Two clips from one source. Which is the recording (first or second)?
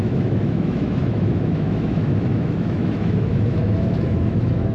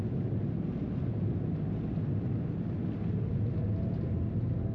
second